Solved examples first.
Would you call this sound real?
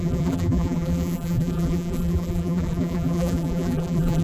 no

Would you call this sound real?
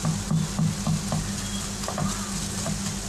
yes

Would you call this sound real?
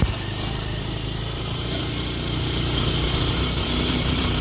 no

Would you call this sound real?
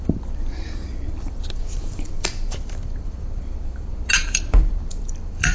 no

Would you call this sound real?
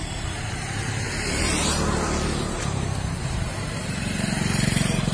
no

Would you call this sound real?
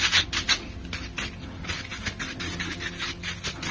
yes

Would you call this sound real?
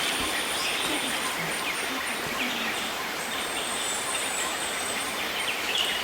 no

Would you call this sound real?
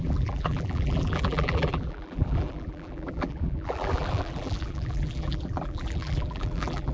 no